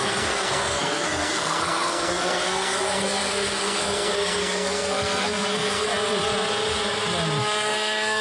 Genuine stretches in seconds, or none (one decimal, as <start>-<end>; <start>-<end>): 5.9-7.4